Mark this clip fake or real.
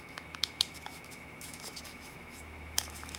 fake